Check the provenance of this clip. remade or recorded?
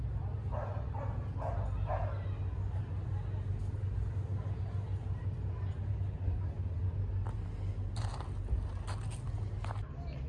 recorded